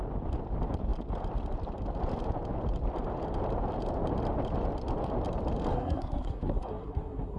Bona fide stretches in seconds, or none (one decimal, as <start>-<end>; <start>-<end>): 0.0-5.7